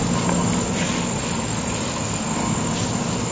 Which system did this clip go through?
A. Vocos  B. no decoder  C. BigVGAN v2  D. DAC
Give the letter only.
B